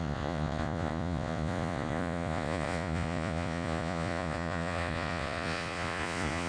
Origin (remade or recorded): remade